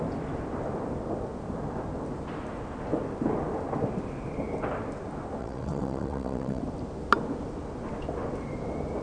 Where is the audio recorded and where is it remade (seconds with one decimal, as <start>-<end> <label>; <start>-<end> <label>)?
0.0-5.4 recorded; 5.4-6.6 remade; 6.6-9.0 recorded